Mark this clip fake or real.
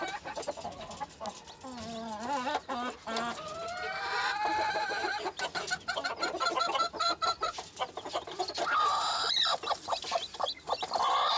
real